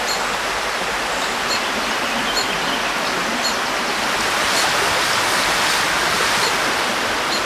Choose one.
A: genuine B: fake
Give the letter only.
A